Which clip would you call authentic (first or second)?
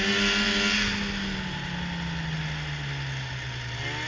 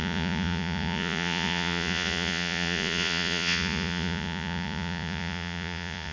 first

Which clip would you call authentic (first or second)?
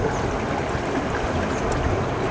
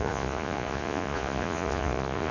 first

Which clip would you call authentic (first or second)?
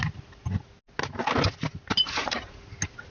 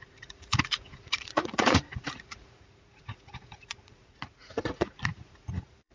first